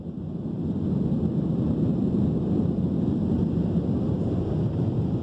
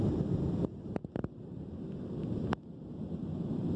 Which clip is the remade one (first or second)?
second